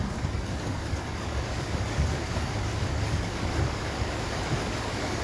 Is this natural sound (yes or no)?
no